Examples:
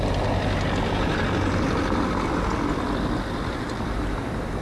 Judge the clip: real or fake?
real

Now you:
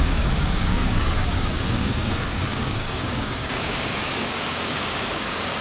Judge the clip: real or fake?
fake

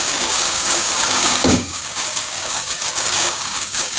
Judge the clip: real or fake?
fake